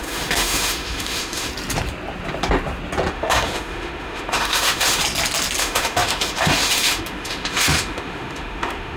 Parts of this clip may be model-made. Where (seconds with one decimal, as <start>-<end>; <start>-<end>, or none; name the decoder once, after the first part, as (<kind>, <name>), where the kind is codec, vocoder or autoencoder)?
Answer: 0.0-1.5 (autoencoder, DAC-VAE); 3.1-5.0; 5.6-9.0